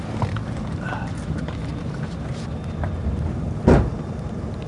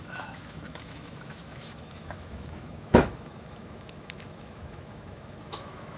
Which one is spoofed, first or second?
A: second